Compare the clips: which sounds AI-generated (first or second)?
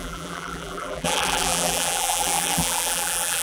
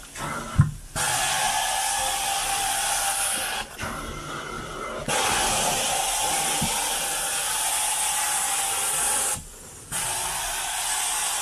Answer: first